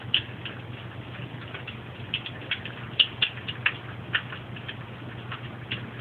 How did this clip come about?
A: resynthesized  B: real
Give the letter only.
B